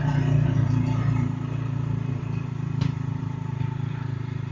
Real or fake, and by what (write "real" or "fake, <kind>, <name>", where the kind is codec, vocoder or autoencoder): fake, vocoder, BigVGAN v2